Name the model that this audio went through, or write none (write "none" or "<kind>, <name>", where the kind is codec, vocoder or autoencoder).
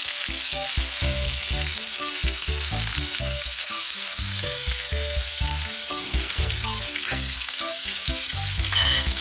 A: codec, SNAC